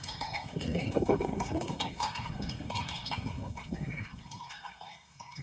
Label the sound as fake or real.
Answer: fake